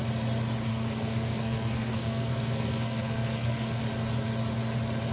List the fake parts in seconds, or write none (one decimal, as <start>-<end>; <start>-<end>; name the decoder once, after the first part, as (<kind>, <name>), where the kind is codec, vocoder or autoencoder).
0.7-3.8 (codec, SNAC)